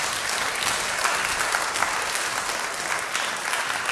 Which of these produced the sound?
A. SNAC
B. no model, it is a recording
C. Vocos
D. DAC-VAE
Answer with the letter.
B